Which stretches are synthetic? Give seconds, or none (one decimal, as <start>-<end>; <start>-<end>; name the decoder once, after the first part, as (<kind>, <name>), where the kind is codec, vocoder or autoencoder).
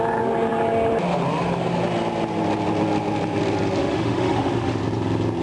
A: 3.8-4.8 (autoencoder, DAC-VAE)